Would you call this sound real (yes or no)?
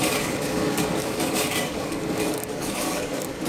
no